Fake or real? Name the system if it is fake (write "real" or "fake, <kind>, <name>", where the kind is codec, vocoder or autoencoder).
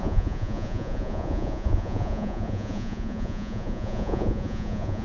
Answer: fake, vocoder, Vocos